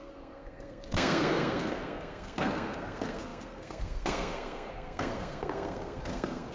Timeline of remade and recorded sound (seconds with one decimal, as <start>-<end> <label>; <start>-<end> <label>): 0.0-6.5 remade